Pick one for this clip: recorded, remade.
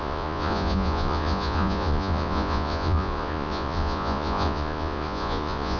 remade